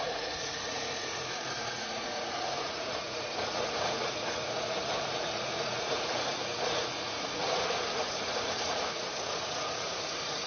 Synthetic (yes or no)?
yes